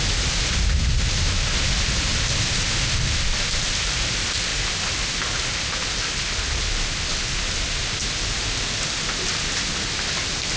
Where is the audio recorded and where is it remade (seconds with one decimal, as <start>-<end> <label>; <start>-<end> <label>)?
0.0-7.1 recorded; 7.1-9.2 remade; 9.2-10.6 recorded